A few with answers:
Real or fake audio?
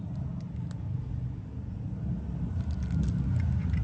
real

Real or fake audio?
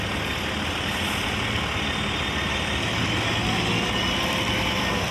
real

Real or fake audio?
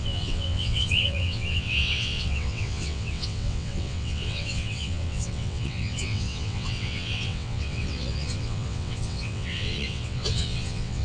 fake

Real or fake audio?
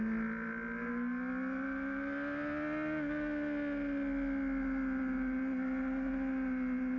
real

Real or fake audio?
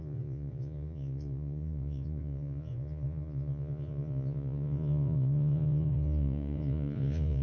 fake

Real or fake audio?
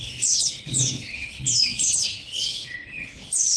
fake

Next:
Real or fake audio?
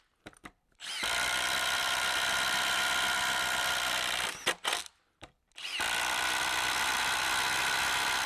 real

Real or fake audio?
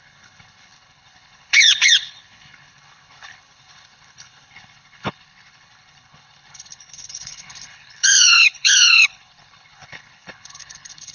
fake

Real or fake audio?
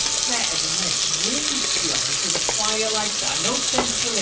real